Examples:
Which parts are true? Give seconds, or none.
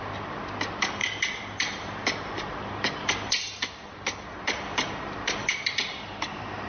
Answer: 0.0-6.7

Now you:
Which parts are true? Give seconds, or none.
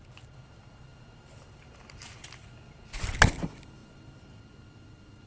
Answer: 0.0-5.3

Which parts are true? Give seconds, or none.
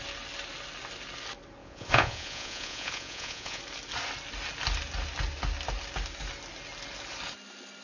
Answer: 0.0-1.6; 3.6-7.8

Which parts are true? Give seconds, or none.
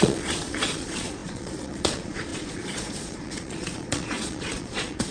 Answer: none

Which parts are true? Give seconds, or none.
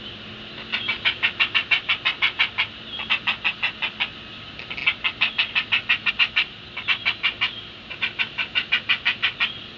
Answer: 0.0-9.8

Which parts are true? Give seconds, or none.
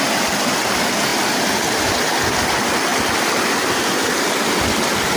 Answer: 0.0-5.2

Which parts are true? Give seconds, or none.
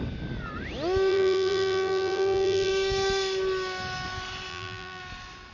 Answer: 0.0-1.1; 2.7-4.5; 5.0-5.5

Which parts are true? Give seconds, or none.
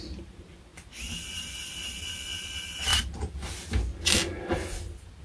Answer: 0.0-5.2